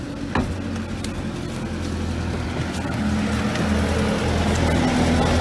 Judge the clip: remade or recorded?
recorded